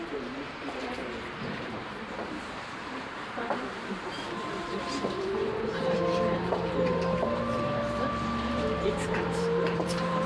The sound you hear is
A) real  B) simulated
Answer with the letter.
B